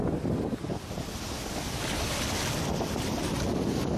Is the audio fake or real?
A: real